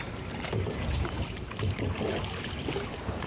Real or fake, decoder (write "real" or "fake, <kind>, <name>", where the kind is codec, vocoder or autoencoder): fake, vocoder, BigVGAN v2